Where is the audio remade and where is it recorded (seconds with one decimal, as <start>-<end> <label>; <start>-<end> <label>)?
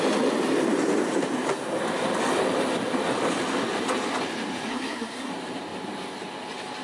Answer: 0.0-4.7 recorded; 4.7-5.3 remade; 5.3-6.8 recorded